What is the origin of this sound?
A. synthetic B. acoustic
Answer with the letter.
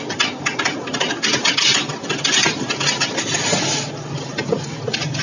B